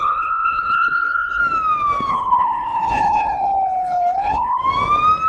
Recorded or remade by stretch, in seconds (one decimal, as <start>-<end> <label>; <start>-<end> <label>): 0.0-1.4 remade; 1.4-2.1 recorded; 2.1-4.6 remade; 4.6-5.3 recorded